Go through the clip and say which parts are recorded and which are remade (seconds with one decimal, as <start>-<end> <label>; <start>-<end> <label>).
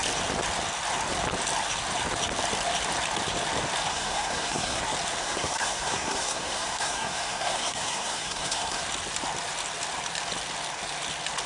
0.0-3.9 recorded; 3.9-4.8 remade; 4.8-5.2 recorded; 5.2-8.8 remade; 8.8-11.5 recorded